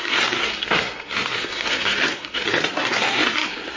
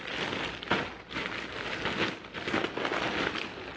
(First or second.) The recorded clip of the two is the second